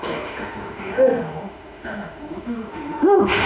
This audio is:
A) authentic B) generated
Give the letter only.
B